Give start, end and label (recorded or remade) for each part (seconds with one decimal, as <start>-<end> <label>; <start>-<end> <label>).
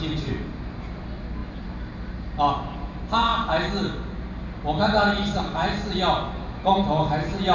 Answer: 0.0-7.5 recorded